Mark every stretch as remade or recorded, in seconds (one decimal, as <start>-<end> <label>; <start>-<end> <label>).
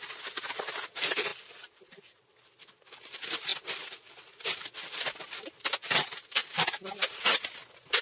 0.0-3.5 remade; 3.5-5.2 recorded; 5.2-8.0 remade